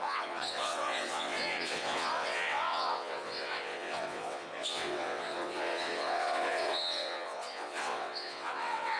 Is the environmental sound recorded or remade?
remade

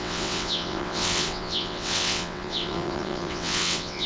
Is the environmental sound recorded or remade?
remade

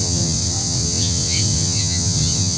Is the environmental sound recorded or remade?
remade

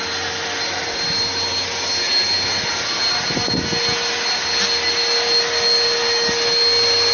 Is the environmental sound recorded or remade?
recorded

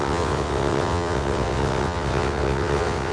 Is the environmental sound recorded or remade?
remade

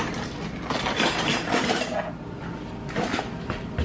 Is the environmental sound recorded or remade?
recorded